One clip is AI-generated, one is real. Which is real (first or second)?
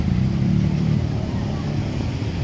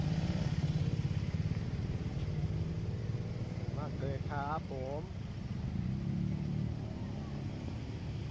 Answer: second